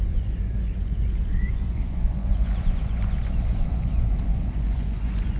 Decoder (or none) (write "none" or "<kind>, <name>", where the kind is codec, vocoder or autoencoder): vocoder, Vocos